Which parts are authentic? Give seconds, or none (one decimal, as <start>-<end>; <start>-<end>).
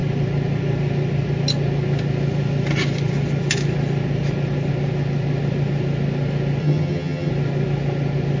0.0-6.6; 7.3-8.4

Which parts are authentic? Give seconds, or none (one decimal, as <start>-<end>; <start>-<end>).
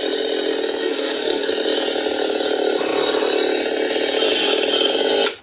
0.0-0.8; 1.5-5.4